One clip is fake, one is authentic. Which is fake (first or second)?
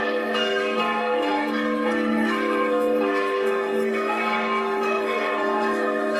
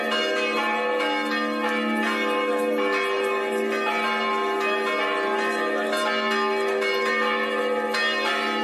first